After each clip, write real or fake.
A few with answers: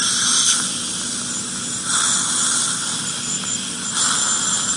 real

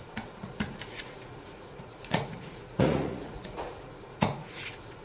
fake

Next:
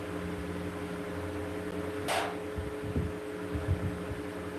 real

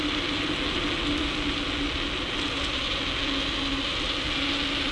real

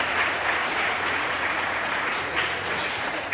fake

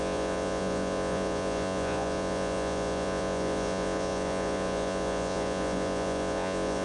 fake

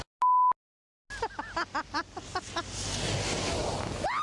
real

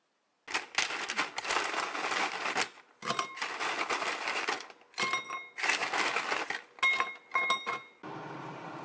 real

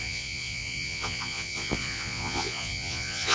fake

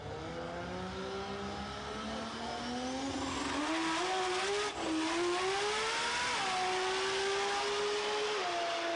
real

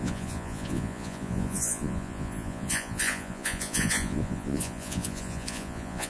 fake